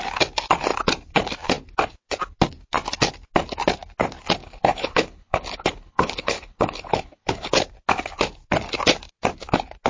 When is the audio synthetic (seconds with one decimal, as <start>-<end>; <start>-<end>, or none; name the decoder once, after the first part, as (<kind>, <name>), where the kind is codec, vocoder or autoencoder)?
4.4-7.5 (codec, HILCodec)